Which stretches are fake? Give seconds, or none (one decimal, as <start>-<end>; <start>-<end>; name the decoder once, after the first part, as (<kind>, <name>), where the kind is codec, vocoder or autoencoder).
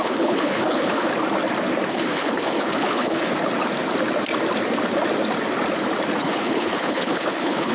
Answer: 0.0-1.1 (codec, HILCodec); 1.9-3.3; 6.2-7.7